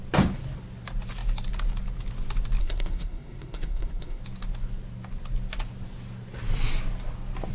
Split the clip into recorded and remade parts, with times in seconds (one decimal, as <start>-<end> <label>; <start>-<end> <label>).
0.0-2.6 recorded; 2.6-4.2 remade; 4.2-7.5 recorded